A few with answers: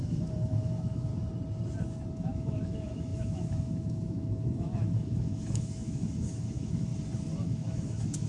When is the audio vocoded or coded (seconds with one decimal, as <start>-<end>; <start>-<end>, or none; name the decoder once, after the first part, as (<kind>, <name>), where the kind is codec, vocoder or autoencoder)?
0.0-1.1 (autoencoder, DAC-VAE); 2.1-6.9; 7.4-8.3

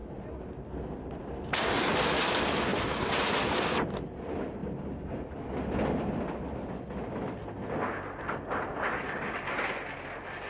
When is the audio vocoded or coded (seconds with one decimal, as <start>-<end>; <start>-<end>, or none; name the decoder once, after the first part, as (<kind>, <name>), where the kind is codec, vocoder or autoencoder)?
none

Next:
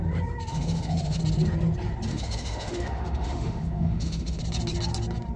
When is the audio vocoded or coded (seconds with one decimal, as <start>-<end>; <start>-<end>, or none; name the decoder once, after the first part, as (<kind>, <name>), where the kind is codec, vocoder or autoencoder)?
0.5-1.2 (autoencoder, DAC-VAE); 2.1-4.4